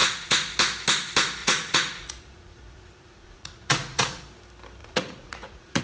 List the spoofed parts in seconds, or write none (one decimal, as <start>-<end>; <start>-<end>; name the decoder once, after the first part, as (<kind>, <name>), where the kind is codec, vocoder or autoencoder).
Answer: 0.0-0.5 (vocoder, Vocos); 1.4-4.2; 4.8-5.8